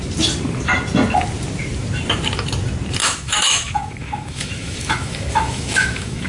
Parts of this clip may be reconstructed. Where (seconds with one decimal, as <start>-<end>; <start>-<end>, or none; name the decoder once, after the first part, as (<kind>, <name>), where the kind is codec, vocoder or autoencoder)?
3.0-6.3 (autoencoder, DAC-VAE)